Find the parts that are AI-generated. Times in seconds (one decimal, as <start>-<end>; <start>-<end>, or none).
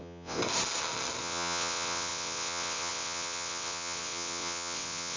0.0-0.4; 1.2-5.2